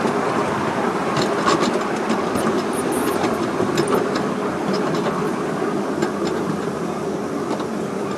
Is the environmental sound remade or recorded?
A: recorded